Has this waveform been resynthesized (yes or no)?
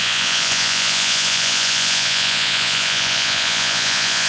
yes